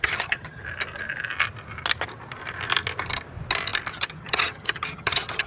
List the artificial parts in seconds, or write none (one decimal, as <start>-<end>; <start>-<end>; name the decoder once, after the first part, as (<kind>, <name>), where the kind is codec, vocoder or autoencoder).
0.0-0.6 (vocoder, HiFi-GAN); 3.9-5.5